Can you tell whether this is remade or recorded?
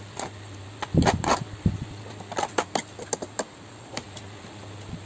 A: recorded